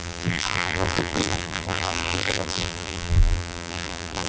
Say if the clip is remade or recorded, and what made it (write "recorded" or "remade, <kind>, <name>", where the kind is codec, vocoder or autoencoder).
remade, vocoder, BigVGAN v2